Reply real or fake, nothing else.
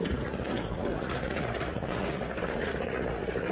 fake